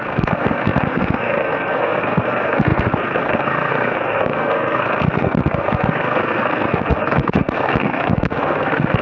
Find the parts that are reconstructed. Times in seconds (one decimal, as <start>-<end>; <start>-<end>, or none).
0.0-9.0